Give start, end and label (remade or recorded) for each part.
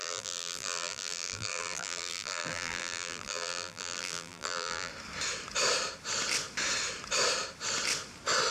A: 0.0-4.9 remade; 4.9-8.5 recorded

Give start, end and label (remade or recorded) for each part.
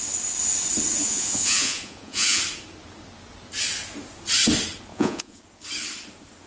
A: 0.0-1.0 recorded; 1.0-2.4 remade; 2.4-4.9 recorded; 4.9-5.4 remade; 5.4-6.5 recorded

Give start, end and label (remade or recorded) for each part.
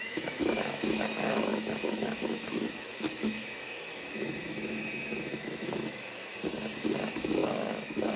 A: 0.0-6.3 remade; 6.3-6.9 recorded; 6.9-8.2 remade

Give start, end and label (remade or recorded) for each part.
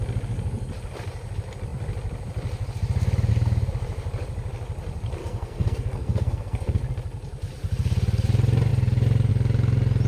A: 0.0-5.2 recorded; 5.2-6.8 remade; 6.8-10.1 recorded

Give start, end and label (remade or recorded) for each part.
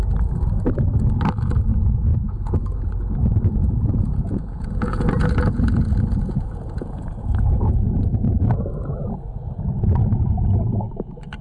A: 0.0-1.7 recorded; 1.7-2.5 remade; 2.5-3.6 recorded; 3.6-8.6 remade; 8.6-11.4 recorded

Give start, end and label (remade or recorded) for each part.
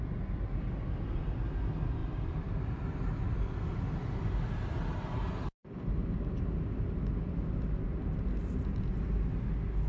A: 0.0-2.0 recorded; 2.0-3.7 remade; 3.7-9.9 recorded